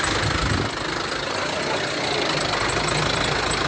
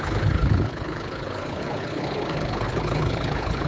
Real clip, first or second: first